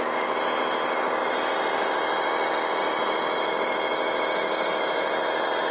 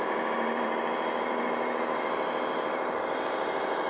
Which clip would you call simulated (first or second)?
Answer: second